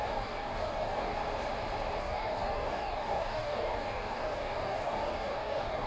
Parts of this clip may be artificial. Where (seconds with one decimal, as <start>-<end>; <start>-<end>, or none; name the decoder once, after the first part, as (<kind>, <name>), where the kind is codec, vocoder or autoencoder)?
0.0-1.2 (codec, DAC); 2.0-5.9